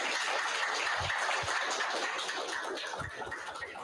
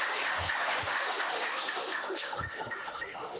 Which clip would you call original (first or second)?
first